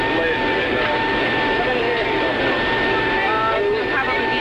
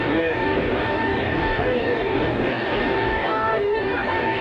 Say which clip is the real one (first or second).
first